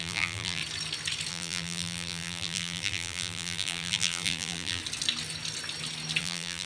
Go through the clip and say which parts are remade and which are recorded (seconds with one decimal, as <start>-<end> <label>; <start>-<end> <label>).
0.0-0.6 remade; 0.6-1.3 recorded; 1.3-4.8 remade; 4.8-6.2 recorded; 6.2-6.7 remade